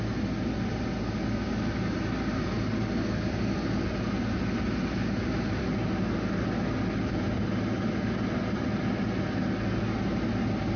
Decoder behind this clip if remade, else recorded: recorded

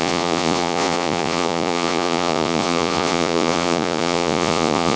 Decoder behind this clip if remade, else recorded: remade, vocoder, Vocos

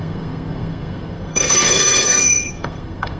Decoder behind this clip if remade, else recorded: remade, codec, SNAC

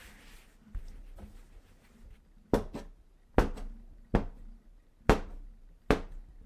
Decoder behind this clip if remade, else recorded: recorded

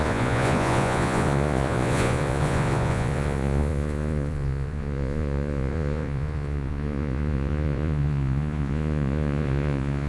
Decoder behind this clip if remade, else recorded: remade, vocoder, Vocos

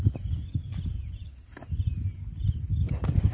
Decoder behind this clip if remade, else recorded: recorded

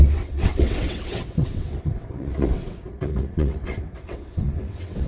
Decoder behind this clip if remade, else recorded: remade, vocoder, WaveNeXt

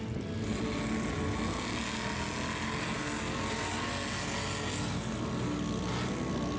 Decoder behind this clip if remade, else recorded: recorded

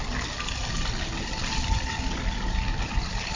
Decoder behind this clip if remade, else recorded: recorded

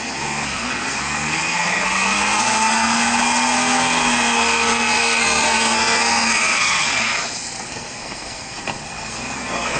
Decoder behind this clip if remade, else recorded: remade, codec, SNAC